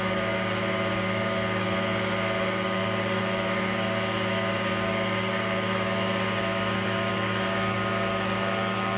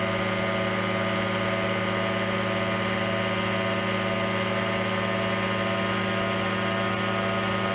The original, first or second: second